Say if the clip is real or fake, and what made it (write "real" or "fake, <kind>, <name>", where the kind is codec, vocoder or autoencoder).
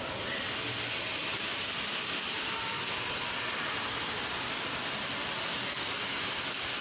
real